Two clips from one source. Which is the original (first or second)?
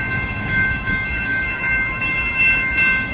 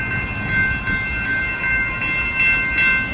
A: second